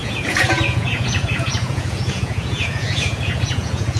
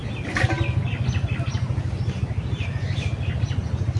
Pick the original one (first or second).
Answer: second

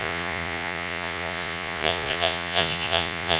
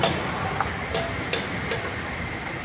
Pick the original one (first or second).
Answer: second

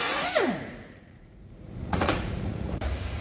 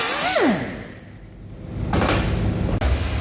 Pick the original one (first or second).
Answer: second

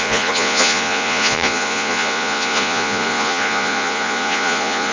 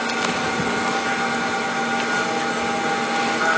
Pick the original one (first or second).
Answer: second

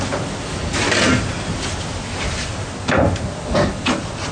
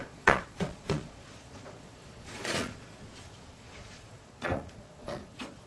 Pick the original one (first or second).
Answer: first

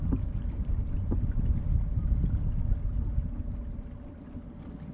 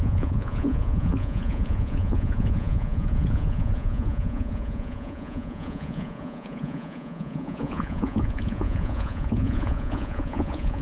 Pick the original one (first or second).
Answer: first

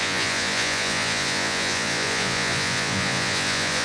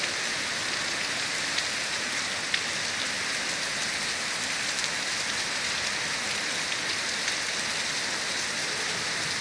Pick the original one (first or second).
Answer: second